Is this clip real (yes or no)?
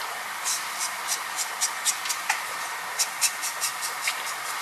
yes